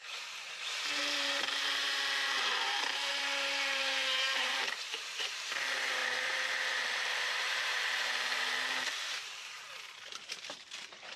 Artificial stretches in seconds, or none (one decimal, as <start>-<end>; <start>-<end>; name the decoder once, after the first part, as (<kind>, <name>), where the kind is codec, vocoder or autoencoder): 0.0-11.2 (vocoder, BigVGAN v2)